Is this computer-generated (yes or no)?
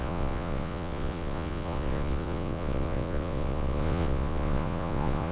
yes